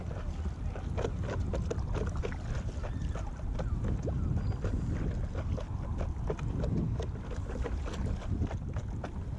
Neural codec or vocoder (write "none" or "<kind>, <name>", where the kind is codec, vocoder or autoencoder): none